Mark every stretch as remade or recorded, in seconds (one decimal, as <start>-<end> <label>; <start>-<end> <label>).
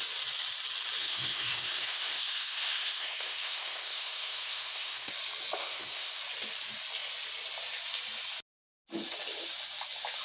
0.0-1.0 recorded; 1.0-5.1 remade; 5.1-5.6 recorded; 5.6-6.2 remade; 6.2-10.2 recorded